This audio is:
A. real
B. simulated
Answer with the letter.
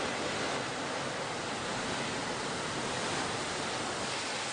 A